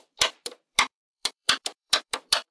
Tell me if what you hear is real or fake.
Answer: fake